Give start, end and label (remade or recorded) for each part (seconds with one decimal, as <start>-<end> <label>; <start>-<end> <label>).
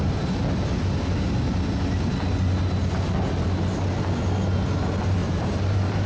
0.0-5.2 recorded; 5.2-6.1 remade